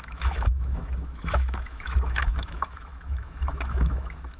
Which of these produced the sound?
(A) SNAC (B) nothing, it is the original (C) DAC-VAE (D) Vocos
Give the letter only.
C